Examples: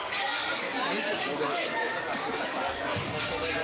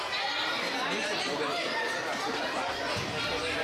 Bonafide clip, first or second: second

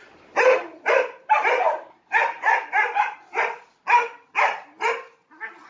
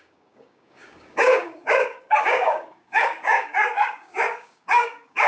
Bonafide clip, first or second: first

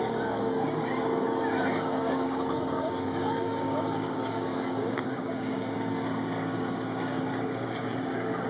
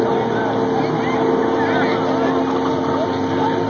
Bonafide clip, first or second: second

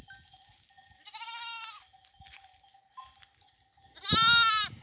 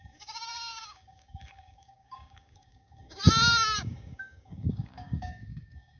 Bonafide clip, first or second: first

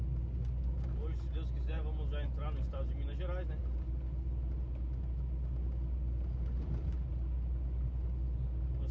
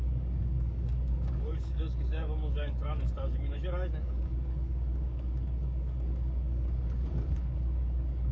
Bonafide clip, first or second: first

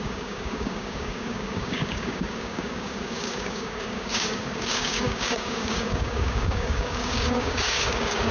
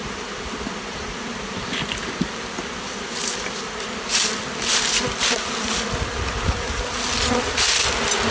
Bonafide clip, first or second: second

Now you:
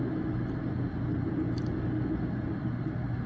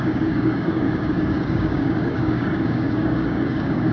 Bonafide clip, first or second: first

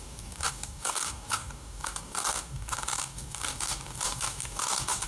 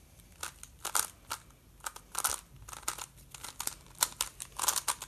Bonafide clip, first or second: second